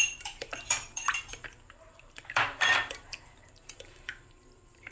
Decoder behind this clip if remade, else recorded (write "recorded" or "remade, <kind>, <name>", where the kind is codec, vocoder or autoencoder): remade, vocoder, BigVGAN v2